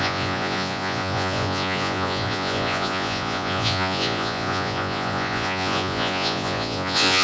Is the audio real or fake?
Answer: fake